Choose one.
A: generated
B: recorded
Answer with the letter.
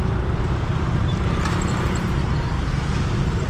A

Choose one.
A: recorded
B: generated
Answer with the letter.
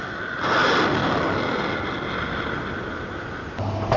A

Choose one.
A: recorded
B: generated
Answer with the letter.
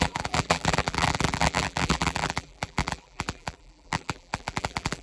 B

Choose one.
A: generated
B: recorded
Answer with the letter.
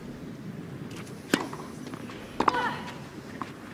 B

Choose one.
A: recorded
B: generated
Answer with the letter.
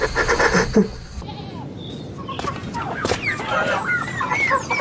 A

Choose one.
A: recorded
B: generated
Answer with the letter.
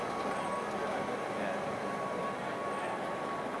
A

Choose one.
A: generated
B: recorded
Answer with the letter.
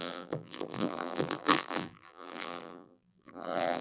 A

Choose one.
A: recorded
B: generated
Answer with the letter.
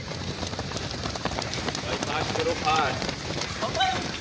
B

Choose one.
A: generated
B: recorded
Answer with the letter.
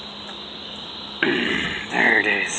B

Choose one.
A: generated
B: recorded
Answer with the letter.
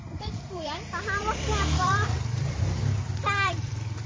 A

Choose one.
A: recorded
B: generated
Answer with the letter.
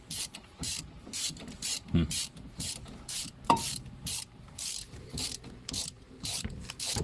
B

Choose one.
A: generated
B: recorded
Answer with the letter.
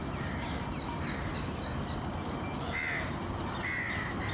B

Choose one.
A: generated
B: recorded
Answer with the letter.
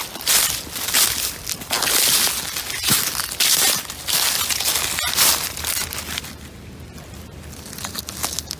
B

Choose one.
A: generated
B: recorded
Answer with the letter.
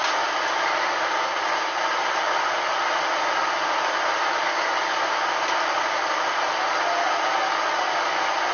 B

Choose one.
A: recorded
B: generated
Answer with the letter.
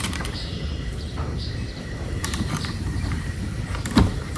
B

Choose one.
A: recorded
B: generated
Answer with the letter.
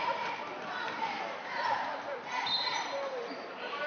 B